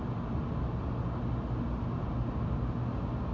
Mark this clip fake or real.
real